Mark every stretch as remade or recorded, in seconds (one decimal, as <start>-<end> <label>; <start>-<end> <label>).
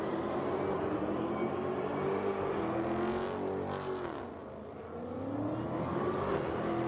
0.0-6.9 recorded